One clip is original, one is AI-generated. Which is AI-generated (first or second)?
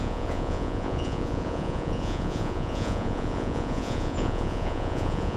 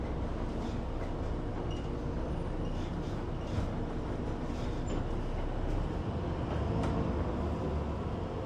first